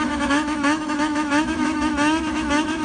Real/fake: fake